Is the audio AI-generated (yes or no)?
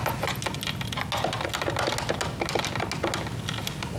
no